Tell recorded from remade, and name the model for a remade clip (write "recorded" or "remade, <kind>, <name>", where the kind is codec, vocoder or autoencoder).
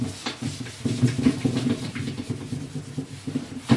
recorded